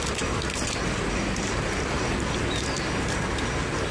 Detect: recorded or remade recorded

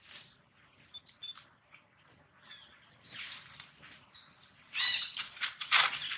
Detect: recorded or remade remade